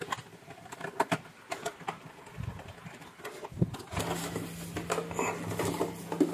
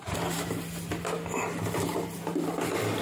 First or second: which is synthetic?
second